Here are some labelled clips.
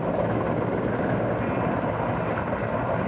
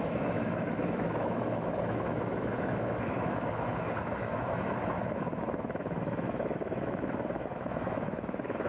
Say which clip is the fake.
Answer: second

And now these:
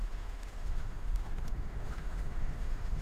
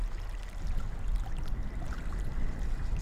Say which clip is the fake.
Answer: first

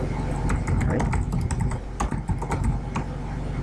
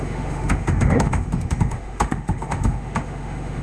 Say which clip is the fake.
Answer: second